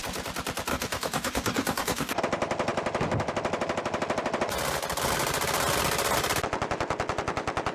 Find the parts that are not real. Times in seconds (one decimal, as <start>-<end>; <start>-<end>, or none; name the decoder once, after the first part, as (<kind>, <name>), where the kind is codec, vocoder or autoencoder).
0.7-2.2 (codec, DAC)